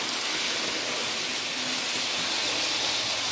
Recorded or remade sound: recorded